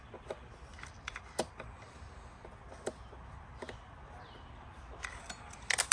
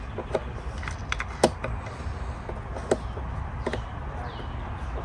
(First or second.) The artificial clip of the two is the first